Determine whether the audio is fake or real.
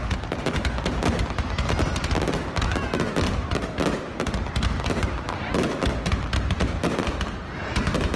real